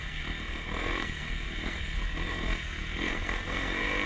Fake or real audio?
fake